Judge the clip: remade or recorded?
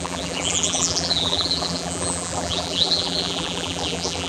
remade